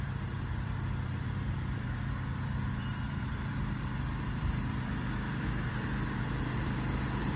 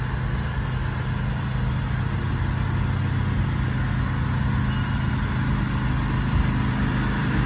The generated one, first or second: first